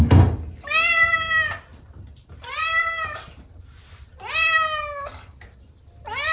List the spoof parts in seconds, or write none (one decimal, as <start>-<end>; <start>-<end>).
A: 1.7-4.1